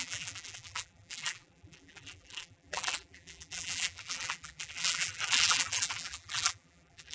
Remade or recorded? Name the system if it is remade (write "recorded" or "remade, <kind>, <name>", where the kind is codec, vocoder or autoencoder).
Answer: remade, vocoder, BigVGAN v2